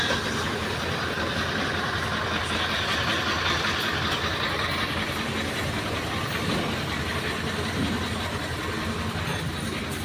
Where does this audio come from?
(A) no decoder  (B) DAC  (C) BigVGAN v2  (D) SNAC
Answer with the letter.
A